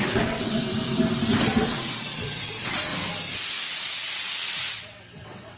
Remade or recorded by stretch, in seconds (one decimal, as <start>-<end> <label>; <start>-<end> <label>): 0.0-0.6 remade; 0.6-1.4 recorded; 1.4-2.9 remade; 2.9-3.8 recorded; 3.8-5.6 remade